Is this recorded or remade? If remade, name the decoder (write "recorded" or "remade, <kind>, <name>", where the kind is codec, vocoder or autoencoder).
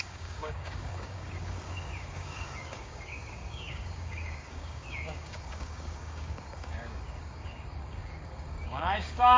remade, codec, DAC